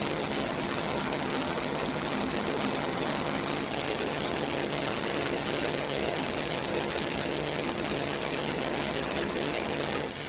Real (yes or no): no